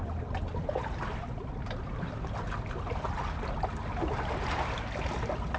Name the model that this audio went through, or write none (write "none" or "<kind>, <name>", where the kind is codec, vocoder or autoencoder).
none